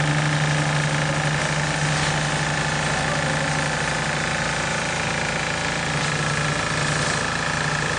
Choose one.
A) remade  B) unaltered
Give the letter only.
B